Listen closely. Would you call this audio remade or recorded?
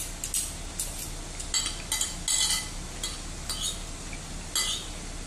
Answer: recorded